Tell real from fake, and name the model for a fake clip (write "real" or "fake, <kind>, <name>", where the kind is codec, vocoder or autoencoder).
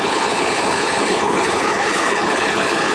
fake, codec, HILCodec